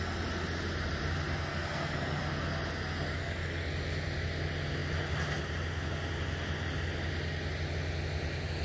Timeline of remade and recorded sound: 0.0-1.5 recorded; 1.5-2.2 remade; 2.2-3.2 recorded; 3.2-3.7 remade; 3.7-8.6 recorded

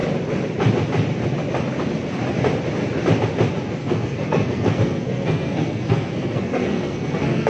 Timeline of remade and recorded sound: 0.0-3.8 recorded; 3.8-7.5 remade

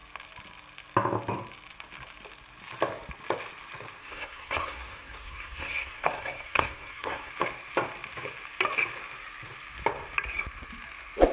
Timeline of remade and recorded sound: 0.0-4.0 recorded; 4.0-7.3 remade; 7.3-11.3 recorded